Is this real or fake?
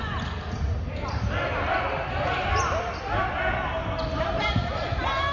real